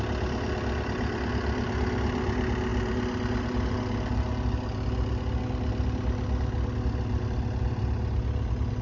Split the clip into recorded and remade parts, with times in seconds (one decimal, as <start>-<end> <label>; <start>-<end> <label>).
0.0-8.8 recorded